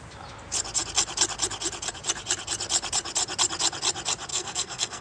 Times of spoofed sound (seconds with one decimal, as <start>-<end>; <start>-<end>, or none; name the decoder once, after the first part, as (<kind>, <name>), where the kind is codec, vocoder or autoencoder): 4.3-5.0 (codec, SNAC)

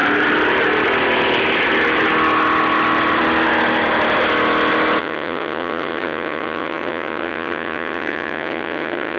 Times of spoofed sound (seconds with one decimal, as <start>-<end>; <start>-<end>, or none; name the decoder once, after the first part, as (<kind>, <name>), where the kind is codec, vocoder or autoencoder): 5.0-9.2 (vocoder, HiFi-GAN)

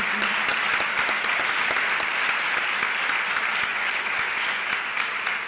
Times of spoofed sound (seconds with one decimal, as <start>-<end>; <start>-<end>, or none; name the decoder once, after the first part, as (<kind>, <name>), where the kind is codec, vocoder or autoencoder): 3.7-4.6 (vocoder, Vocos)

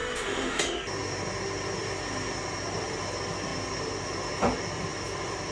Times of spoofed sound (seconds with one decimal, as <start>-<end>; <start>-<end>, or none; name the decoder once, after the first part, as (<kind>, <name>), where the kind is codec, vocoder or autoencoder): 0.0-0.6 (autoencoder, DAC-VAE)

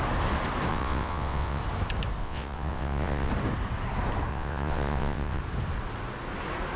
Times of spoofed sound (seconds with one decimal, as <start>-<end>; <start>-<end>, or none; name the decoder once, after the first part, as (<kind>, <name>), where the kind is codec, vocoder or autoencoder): 0.7-1.6 (vocoder, WaveNeXt); 2.2-3.3; 4.3-5.4

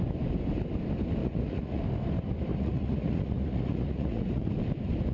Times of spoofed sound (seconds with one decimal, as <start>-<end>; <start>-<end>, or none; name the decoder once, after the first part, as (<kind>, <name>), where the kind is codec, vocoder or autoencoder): 1.2-1.8 (vocoder, Vocos); 2.5-4.5